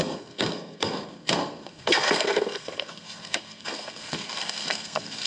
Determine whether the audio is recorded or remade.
remade